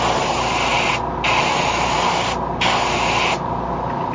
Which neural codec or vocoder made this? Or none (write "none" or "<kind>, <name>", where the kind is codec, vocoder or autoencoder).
none